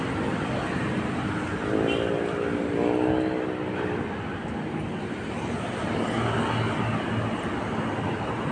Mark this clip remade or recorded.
recorded